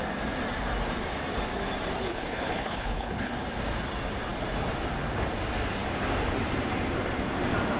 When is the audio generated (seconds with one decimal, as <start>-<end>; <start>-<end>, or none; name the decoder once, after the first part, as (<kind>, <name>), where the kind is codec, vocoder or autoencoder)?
2.0-3.3 (codec, HILCodec)